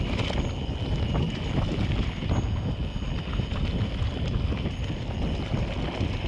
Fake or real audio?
real